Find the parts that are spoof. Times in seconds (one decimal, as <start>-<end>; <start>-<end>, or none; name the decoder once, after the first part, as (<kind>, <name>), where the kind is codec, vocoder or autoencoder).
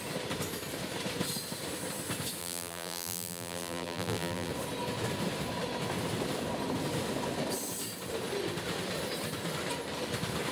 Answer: 2.4-4.5 (vocoder, BigVGAN v2)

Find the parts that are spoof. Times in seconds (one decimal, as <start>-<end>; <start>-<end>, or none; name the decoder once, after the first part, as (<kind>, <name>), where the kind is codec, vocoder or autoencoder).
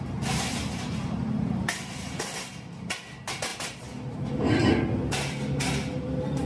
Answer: 3.5-4.3 (vocoder, BigVGAN v2)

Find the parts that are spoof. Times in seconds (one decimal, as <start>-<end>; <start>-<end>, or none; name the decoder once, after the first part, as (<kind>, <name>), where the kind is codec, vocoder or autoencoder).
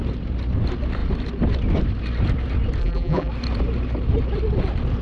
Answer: 2.8-3.3 (vocoder, BigVGAN v2)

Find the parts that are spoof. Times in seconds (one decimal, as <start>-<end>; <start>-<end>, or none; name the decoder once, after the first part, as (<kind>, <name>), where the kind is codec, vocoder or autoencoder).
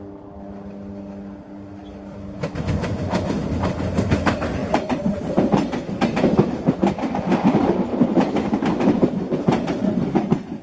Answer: 4.6-5.3 (vocoder, BigVGAN v2); 7.9-9.9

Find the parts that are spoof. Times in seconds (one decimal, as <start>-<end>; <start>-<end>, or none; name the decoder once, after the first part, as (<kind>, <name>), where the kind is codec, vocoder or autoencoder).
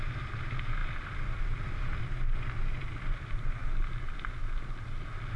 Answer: 0.8-2.0 (vocoder, BigVGAN v2)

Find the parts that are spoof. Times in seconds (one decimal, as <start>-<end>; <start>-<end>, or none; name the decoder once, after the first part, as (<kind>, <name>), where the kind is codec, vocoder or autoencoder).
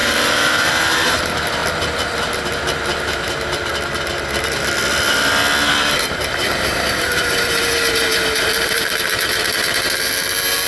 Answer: 0.0-1.6 (vocoder, BigVGAN v2); 3.0-3.7; 5.7-10.7